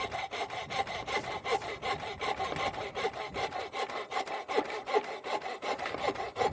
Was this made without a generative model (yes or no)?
yes